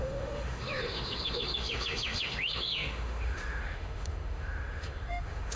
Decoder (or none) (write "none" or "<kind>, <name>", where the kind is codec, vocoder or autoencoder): autoencoder, DAC-VAE